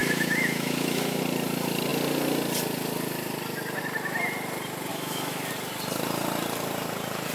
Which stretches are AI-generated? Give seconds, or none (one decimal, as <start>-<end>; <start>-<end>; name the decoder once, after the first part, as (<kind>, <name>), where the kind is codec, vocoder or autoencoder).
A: 0.0-1.2 (autoencoder, DAC-VAE); 4.9-5.5